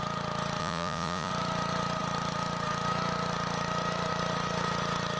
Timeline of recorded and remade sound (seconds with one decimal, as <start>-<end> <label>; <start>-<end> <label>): 0.0-0.6 recorded; 0.6-1.3 remade; 1.3-5.2 recorded